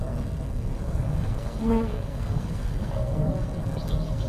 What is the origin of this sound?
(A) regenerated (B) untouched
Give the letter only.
A